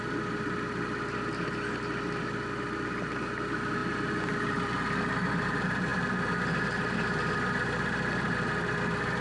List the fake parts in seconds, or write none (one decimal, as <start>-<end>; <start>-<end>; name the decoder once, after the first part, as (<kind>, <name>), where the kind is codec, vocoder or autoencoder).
none